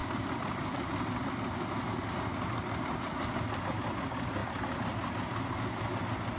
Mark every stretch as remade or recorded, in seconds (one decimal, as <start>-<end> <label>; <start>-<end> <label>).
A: 0.0-6.4 recorded